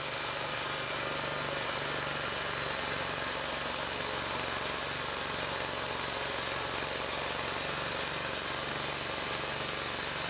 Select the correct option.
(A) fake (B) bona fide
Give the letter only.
B